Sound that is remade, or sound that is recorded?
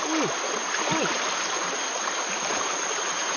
recorded